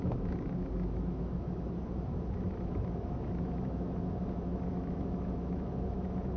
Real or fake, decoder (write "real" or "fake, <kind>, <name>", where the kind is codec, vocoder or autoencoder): fake, autoencoder, DAC-VAE